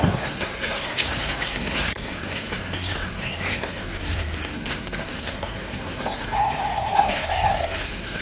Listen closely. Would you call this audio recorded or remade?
remade